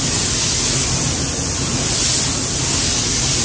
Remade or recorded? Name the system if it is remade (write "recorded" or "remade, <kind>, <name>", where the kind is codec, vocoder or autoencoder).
recorded